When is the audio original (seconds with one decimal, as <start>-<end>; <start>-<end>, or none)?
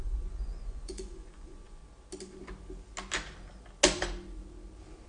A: 1.8-5.1